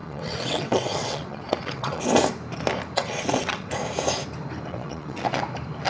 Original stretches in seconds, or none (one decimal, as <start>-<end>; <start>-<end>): 2.0-3.0; 3.7-4.7; 5.4-5.9